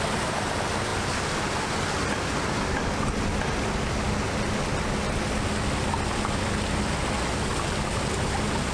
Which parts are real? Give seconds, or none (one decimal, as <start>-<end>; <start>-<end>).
0.0-8.7